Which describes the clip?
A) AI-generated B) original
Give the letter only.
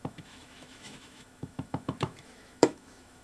A